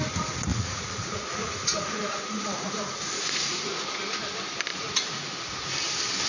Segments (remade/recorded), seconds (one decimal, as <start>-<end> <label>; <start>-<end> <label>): 0.0-0.5 recorded; 0.5-4.0 remade; 4.0-4.7 recorded; 4.7-5.7 remade; 5.7-6.3 recorded